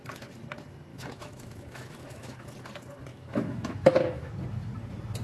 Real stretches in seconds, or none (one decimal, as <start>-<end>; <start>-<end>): 0.0-0.9; 2.5-3.1; 4.3-5.2